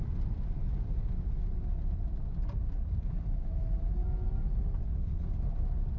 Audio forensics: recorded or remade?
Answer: recorded